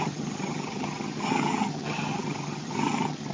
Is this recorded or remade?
remade